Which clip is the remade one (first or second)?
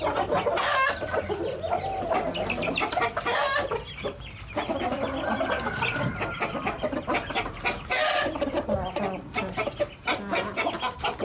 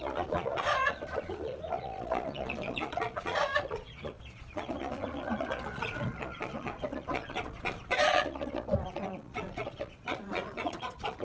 second